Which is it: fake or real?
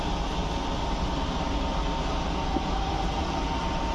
real